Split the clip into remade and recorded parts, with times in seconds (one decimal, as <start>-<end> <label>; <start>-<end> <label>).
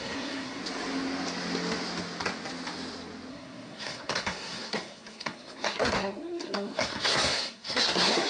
0.0-0.6 remade; 0.6-3.3 recorded; 3.3-8.3 remade